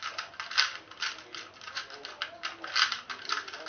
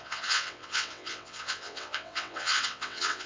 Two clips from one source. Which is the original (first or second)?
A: first